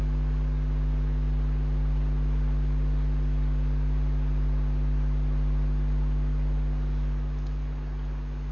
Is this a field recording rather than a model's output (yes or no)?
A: yes